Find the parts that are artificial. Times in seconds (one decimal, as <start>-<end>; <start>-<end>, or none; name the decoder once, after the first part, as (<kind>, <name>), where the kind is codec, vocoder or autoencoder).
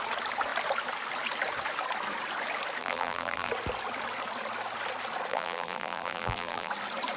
2.8-3.5 (vocoder, BigVGAN v2); 5.3-6.7